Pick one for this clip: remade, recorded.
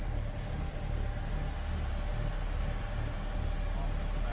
recorded